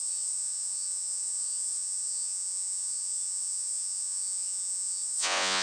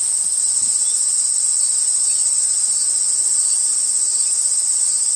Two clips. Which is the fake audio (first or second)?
first